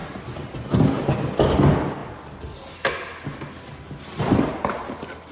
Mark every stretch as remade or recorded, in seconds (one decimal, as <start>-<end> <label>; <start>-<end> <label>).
0.0-5.3 recorded